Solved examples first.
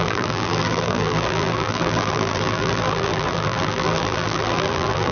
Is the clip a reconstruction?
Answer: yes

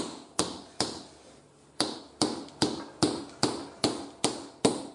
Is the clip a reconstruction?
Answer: no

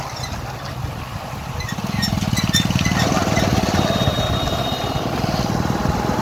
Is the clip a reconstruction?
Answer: no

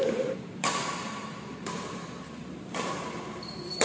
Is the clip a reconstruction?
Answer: yes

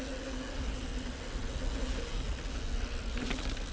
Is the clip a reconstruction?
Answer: no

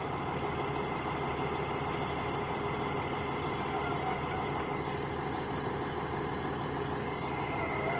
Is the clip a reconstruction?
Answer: no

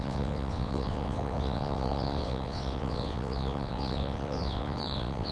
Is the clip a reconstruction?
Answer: yes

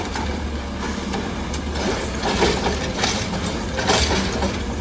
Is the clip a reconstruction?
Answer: no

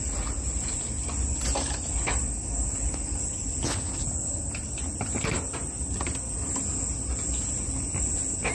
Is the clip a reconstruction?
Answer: no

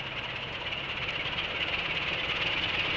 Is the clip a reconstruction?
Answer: no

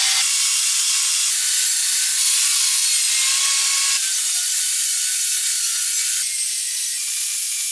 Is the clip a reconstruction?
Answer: no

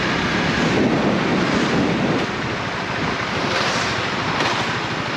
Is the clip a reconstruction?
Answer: no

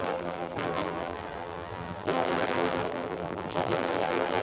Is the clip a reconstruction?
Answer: yes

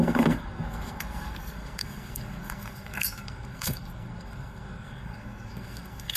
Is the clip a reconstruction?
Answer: yes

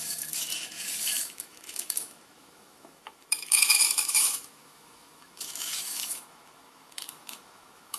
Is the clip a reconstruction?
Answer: yes